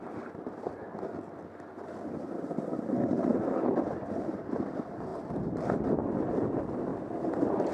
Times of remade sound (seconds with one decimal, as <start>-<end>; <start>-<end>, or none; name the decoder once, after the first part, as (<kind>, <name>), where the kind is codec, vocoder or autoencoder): 0.0-5.1 (vocoder, BigVGAN v2); 6.0-6.9